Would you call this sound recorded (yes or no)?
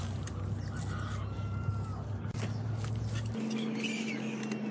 yes